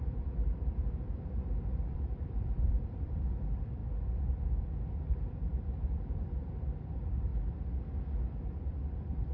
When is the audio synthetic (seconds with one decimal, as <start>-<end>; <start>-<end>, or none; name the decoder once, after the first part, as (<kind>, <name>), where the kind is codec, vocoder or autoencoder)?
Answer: 0.0-3.8 (vocoder, BigVGAN v2); 4.9-7.3; 8.6-9.3